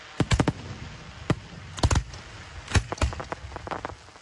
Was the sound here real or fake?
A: real